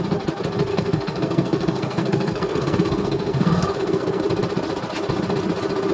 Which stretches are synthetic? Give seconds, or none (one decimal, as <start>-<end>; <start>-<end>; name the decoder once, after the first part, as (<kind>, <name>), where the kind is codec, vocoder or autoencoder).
0.7-4.2 (codec, SNAC)